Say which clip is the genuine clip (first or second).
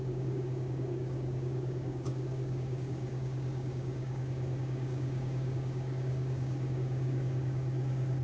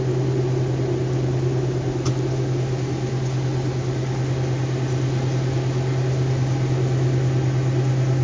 second